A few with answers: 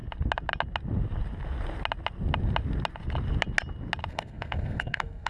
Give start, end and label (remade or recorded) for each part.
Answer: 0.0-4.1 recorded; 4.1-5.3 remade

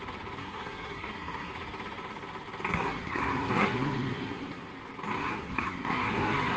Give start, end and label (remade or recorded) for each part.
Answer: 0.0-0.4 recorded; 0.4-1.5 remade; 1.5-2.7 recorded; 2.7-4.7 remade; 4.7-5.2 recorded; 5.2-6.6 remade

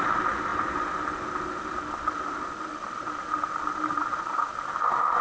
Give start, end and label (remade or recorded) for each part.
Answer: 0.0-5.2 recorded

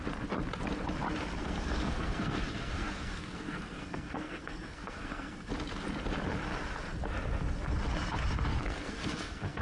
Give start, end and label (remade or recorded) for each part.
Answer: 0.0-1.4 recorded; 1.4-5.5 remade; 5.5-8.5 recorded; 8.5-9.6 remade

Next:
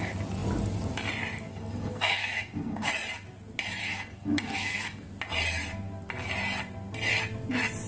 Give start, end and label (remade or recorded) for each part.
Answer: 0.0-1.5 recorded; 1.5-2.9 remade; 2.9-3.8 recorded; 3.8-5.1 remade; 5.1-7.9 recorded

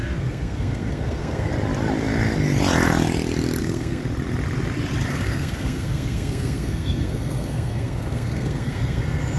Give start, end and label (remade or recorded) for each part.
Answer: 0.0-1.5 remade; 1.5-3.6 recorded; 3.6-4.0 remade; 4.0-5.1 recorded; 5.1-9.4 remade